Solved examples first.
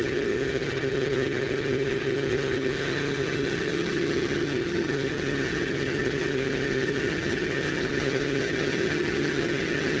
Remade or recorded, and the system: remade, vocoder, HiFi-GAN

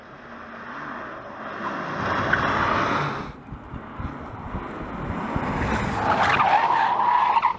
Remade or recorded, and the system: recorded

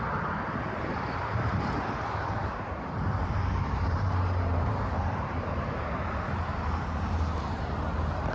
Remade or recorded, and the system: remade, vocoder, BigVGAN v2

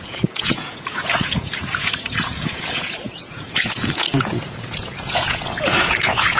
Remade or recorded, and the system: remade, vocoder, Vocos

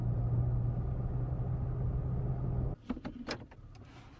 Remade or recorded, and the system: recorded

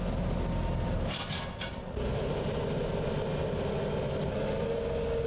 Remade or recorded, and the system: recorded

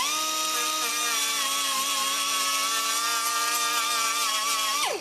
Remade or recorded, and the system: recorded